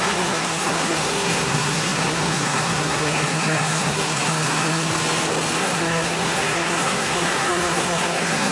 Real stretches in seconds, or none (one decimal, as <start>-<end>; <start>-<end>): 4.9-5.6